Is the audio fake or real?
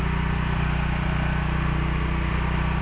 real